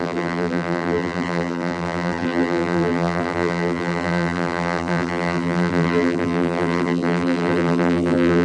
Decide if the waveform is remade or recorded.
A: remade